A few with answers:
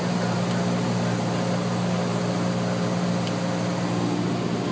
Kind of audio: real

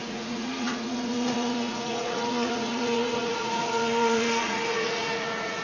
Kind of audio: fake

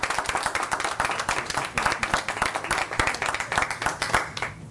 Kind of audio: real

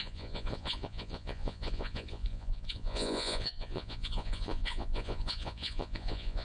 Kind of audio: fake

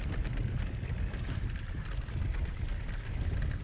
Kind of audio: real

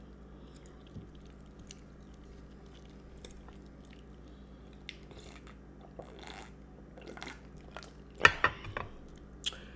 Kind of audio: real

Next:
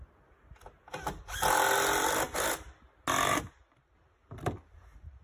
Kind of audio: real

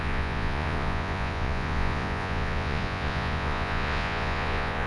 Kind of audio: fake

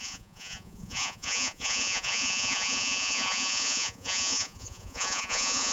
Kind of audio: fake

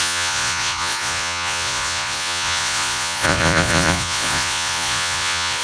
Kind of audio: fake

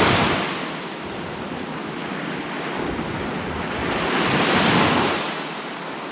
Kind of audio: real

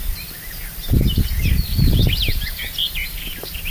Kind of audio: real